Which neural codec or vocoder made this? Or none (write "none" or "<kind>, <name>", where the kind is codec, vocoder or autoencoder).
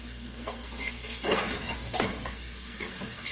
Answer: codec, SNAC